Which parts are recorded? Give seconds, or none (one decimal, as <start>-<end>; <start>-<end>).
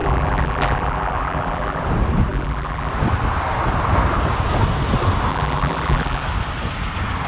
1.8-2.3; 2.9-5.3; 6.2-7.3